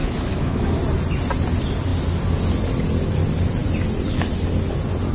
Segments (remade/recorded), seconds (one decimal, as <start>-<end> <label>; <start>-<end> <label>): 0.0-0.8 remade; 0.8-5.1 recorded